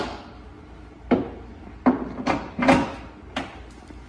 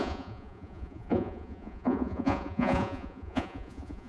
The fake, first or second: second